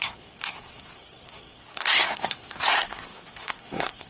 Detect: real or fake fake